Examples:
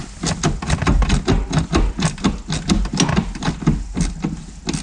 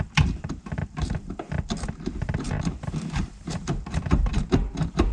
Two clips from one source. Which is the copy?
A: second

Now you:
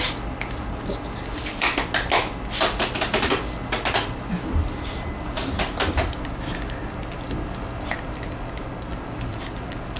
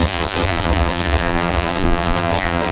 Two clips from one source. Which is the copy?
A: second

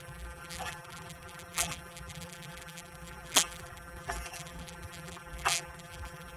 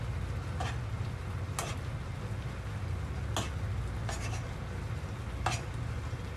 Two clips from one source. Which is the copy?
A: first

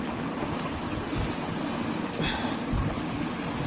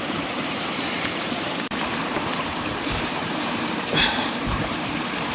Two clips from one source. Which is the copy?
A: second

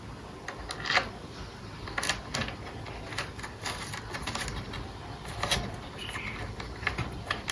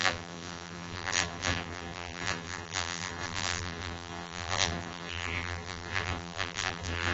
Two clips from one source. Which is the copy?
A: second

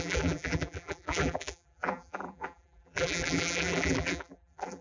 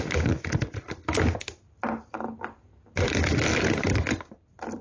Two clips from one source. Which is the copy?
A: first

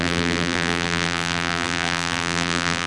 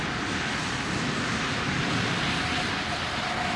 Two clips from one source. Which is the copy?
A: first